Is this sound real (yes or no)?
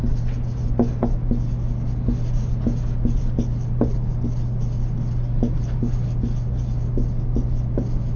yes